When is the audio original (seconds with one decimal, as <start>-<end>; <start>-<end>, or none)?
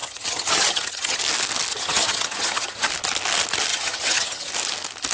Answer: 1.2-1.7; 2.9-3.7; 4.5-5.1